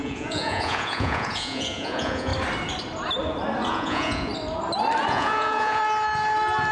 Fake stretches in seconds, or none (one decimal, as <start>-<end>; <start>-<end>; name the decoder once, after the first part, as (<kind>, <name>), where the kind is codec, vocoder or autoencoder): 0.0-2.3 (vocoder, Vocos); 3.7-4.3; 5.1-5.8